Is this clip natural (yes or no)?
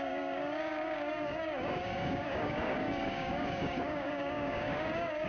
no